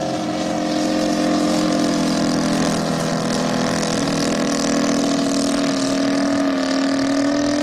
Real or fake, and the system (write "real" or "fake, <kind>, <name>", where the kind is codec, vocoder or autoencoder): real